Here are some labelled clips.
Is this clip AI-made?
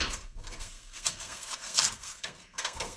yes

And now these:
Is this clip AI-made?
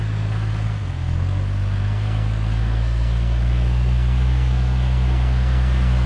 yes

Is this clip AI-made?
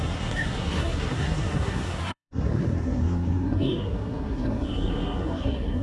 yes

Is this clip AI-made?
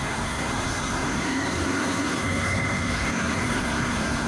yes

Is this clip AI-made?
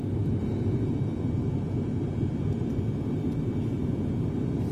no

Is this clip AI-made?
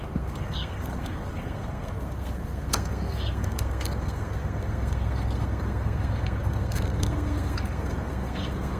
yes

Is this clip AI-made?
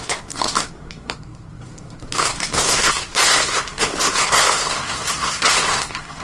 yes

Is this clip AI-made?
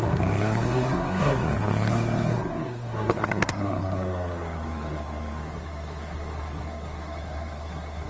yes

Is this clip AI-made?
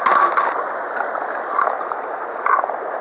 no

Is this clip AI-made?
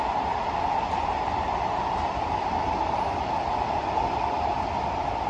no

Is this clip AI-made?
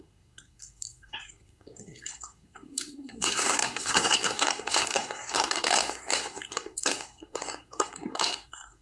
yes